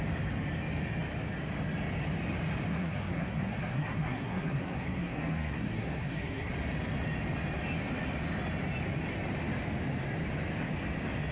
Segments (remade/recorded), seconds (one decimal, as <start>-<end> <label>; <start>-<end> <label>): 0.0-2.7 recorded; 2.7-6.5 remade; 6.5-11.3 recorded